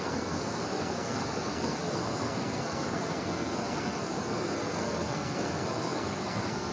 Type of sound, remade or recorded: remade